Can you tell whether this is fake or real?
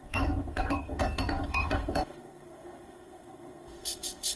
fake